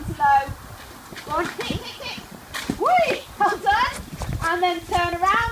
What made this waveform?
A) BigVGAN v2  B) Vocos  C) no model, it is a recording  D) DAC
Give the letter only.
C